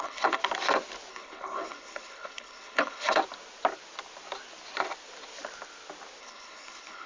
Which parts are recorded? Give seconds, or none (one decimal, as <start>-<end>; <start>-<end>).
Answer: 0.4-1.1; 3.2-6.2